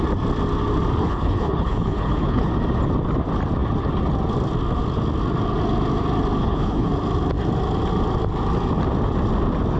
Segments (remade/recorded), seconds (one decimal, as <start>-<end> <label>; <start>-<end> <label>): 0.0-1.0 recorded; 1.0-2.5 remade; 2.5-6.4 recorded; 6.4-6.9 remade; 6.9-9.8 recorded